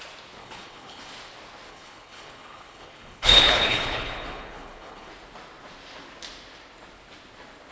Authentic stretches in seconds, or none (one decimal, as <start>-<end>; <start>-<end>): 0.0-0.4; 1.1-1.7; 5.1-7.7

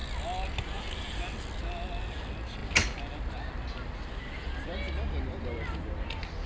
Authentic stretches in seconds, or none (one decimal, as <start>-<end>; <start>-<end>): 0.0-6.5

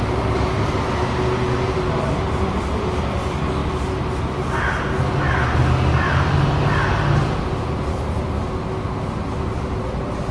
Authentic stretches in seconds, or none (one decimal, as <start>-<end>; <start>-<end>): 0.0-10.3

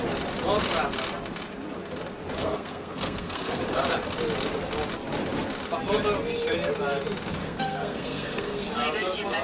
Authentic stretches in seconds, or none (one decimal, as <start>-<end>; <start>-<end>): 0.0-2.4; 3.6-7.4; 8.7-9.4

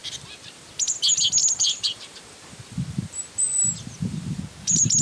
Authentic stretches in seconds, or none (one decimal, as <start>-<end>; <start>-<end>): 0.7-1.4; 4.4-5.0

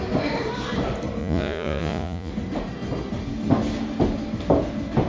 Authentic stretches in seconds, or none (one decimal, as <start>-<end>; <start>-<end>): 0.0-1.2; 2.3-5.1

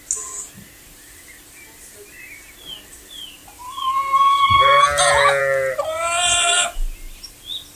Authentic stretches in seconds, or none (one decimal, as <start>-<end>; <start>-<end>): 0.0-7.8